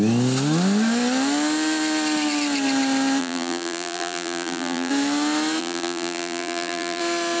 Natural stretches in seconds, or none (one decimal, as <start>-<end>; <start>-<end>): 0.0-3.2; 4.9-5.6; 7.0-7.4

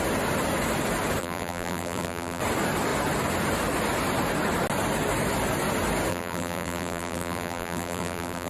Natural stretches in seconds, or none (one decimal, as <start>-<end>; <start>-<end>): 0.0-1.2; 2.4-6.1

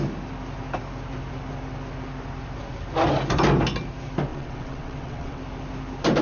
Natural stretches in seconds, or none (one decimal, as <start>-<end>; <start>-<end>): 0.0-4.3; 5.4-6.2

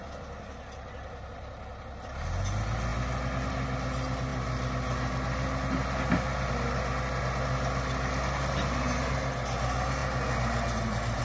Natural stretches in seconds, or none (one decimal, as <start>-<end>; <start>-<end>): 0.0-11.2